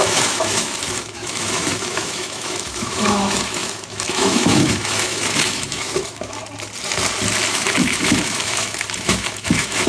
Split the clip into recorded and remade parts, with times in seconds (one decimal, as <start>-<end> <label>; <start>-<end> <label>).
0.0-6.4 remade; 6.4-7.5 recorded; 7.5-9.9 remade